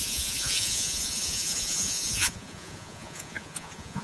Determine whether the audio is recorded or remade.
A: remade